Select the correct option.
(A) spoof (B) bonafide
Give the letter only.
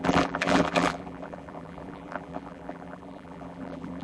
A